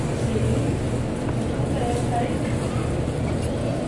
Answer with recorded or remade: recorded